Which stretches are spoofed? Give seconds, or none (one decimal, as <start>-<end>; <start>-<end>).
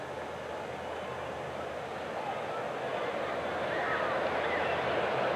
none